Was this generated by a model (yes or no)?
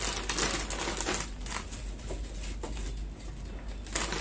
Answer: no